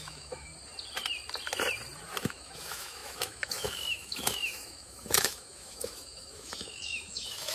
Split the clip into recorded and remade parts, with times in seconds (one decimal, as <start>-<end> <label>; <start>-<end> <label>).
0.0-0.5 remade; 0.5-2.2 recorded; 2.2-7.5 remade